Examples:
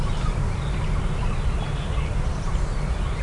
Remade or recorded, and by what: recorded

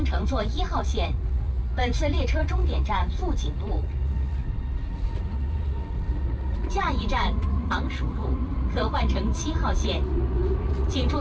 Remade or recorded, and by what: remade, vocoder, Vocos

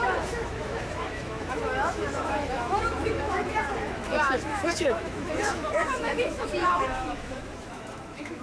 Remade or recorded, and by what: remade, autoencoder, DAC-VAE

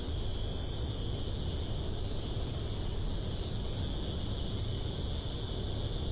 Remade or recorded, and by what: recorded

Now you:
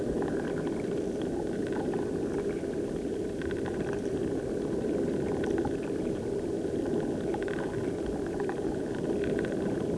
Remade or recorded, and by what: recorded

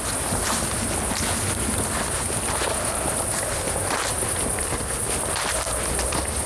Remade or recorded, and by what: recorded